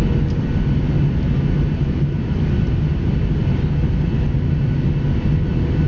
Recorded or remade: recorded